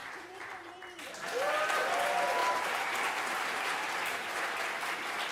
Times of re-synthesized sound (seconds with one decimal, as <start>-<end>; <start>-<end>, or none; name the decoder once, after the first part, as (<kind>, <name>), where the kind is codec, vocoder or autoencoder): 0.0-1.2 (vocoder, BigVGAN v2); 2.4-4.6

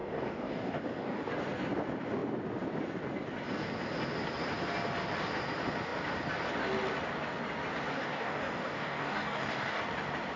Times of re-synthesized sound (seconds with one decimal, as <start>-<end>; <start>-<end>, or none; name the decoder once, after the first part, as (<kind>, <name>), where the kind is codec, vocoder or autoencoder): 0.0-1.3 (codec, DAC); 7.9-9.8

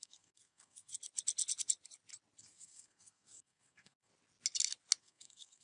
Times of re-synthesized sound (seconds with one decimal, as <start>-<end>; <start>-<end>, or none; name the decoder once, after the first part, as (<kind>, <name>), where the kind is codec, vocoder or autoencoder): 0.0-0.9 (codec, SNAC); 2.4-4.1; 5.0-5.6

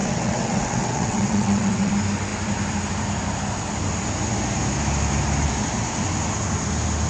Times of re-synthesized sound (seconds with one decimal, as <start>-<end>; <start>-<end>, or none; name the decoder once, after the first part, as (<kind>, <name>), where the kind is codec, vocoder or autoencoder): 0.0-1.9 (vocoder, WaveNeXt)